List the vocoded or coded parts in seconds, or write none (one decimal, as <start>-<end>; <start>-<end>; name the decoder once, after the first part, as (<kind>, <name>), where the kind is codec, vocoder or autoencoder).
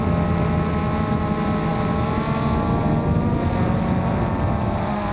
none